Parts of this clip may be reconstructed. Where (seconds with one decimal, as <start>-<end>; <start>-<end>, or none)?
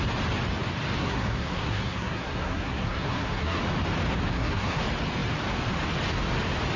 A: 1.0-3.6; 4.3-4.8